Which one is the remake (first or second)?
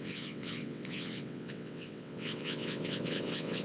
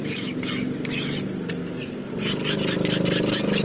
first